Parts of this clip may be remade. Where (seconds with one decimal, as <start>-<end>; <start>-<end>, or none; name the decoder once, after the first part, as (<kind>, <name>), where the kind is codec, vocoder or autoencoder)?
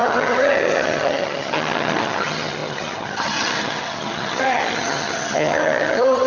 0.0-6.3 (vocoder, HiFi-GAN)